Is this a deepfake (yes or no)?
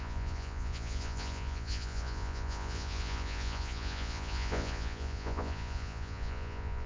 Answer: yes